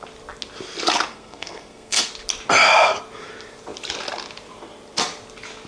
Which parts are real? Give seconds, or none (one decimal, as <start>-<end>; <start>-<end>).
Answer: 0.0-1.1; 2.1-5.7